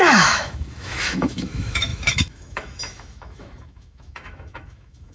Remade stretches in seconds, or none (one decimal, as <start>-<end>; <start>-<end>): 0.0-5.1